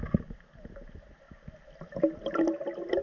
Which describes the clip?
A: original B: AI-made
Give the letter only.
A